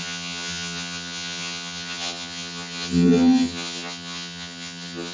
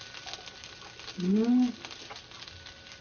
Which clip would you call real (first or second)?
second